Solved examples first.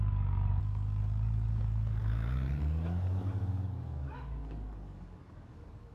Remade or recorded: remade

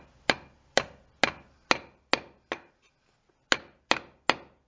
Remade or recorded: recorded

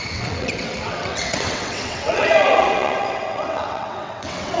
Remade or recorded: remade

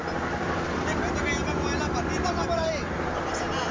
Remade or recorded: recorded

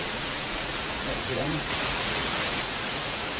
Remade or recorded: remade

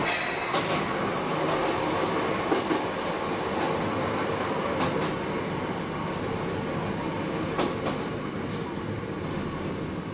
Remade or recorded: recorded